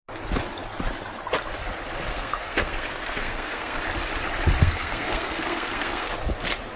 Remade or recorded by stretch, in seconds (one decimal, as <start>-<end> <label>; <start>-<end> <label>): 0.0-2.1 recorded; 2.1-3.8 remade; 3.8-4.6 recorded; 4.6-6.1 remade; 6.1-6.8 recorded